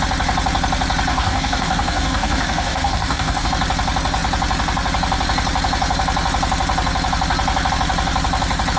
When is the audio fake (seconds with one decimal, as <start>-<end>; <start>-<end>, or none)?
1.1-3.5